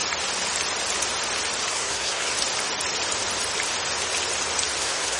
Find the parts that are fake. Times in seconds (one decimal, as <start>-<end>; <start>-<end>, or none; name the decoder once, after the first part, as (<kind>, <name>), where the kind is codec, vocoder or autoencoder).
1.7-2.3 (codec, SNAC); 4.8-5.2